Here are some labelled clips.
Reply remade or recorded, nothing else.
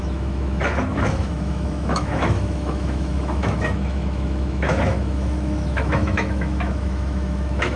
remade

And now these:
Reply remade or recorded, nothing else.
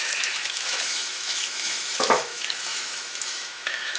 remade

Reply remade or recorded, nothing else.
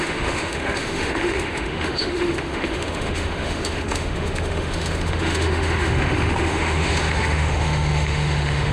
remade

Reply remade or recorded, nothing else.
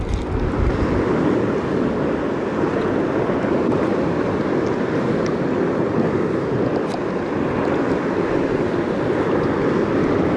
recorded